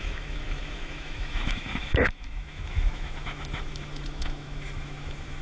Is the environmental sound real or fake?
fake